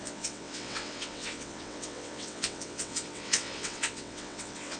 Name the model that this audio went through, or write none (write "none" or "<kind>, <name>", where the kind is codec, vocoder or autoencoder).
vocoder, WaveNeXt